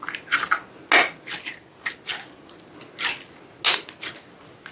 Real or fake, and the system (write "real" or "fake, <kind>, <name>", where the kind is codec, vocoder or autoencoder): real